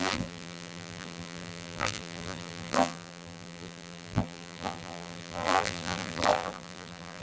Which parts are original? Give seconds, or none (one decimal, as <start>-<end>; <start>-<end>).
none